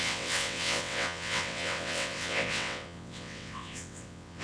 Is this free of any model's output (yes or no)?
no